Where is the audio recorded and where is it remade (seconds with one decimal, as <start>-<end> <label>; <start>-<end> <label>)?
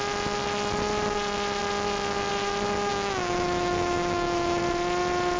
0.0-2.9 recorded; 2.9-4.6 remade; 4.6-5.4 recorded